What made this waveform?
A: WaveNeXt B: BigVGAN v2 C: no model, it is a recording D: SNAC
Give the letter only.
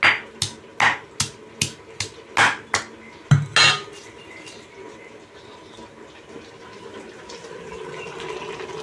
C